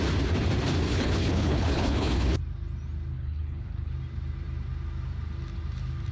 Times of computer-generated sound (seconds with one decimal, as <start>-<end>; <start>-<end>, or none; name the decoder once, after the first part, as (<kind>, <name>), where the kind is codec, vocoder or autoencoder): 0.9-2.4 (codec, HILCodec); 3.1-3.9